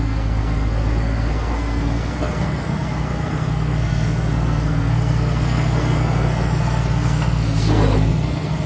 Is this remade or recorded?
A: remade